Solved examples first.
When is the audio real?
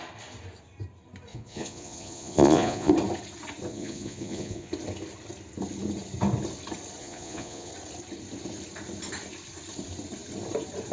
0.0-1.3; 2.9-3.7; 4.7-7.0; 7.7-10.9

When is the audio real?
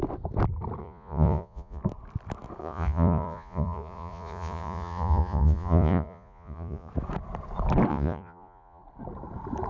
0.0-0.8; 1.8-2.6; 6.9-7.9; 8.8-9.7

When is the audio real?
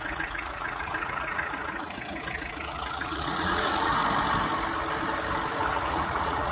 4.0-5.7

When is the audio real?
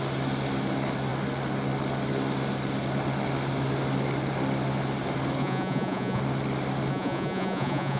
0.0-5.4; 6.2-6.9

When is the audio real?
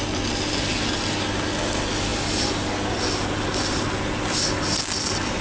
0.0-5.4